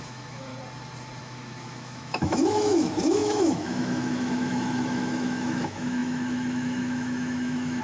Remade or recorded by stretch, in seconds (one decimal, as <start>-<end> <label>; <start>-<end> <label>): 0.0-0.5 remade; 0.5-1.2 recorded; 1.2-7.8 remade